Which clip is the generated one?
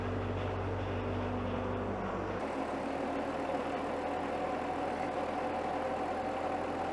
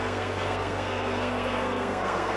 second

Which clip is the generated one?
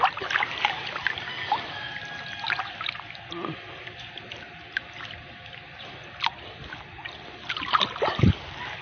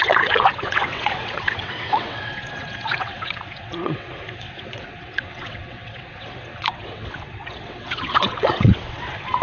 second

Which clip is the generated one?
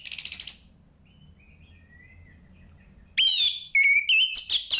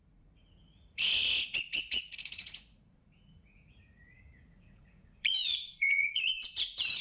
second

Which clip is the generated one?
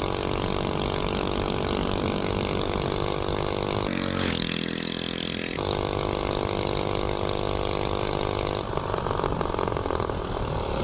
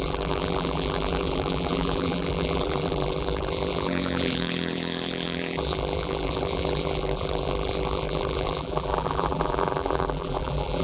second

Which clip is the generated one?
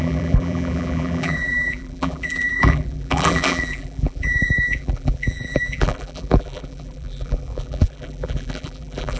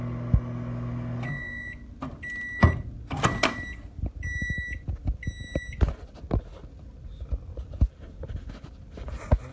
first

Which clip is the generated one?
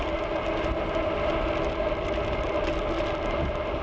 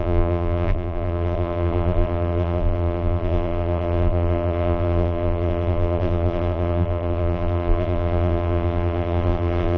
second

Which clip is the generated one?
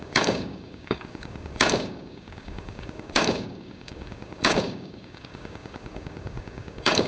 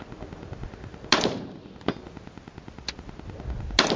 first